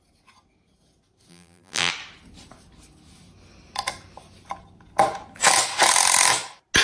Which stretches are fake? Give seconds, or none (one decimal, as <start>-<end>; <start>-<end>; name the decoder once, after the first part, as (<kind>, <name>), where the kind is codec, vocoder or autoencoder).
1.3-1.9 (vocoder, BigVGAN v2)

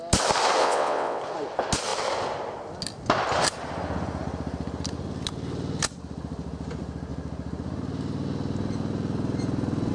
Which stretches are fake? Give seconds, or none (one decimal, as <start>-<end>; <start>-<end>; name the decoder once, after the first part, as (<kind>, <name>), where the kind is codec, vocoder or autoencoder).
0.6-1.2 (vocoder, WaveNeXt)

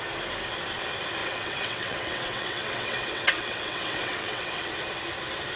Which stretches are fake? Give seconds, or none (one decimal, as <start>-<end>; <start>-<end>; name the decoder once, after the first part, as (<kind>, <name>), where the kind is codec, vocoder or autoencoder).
1.2-4.6 (vocoder, WaveNeXt)

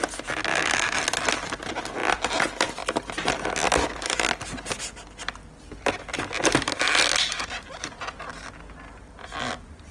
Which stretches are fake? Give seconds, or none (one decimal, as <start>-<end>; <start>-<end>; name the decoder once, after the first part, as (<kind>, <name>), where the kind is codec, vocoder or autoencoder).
0.5-1.0 (autoencoder, DAC-VAE)

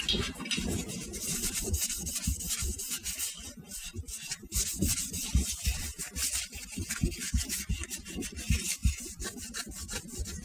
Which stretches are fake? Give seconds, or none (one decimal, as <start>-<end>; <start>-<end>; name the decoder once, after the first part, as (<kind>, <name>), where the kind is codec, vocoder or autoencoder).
none